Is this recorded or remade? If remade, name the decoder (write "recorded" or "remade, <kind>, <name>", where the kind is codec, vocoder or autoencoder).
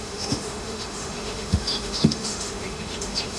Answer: remade, autoencoder, DAC-VAE